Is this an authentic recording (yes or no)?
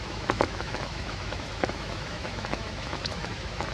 no